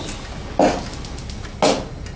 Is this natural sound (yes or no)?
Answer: yes